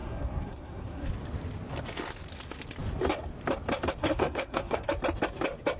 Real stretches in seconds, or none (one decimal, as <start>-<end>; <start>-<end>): 1.1-4.0; 4.9-5.8